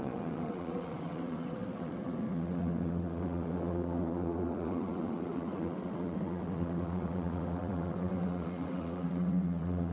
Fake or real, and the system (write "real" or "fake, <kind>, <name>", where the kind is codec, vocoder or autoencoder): fake, vocoder, WaveNeXt